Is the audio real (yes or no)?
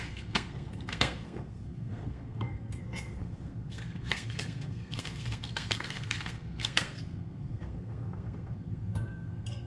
no